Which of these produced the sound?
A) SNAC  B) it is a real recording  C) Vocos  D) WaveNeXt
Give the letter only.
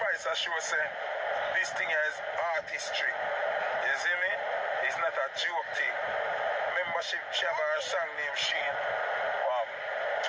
B